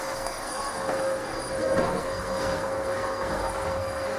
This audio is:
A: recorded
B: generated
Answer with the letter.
B